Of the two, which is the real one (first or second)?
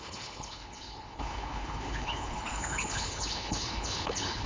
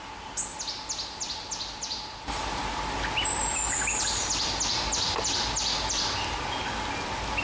second